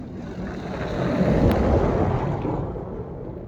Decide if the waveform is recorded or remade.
recorded